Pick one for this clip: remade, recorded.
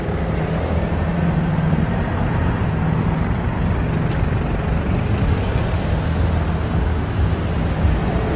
recorded